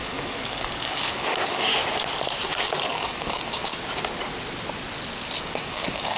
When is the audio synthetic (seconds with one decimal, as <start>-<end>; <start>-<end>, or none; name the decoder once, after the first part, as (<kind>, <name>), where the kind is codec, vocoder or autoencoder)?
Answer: 0.0-1.7 (codec, DAC); 2.5-3.7; 5.4-6.2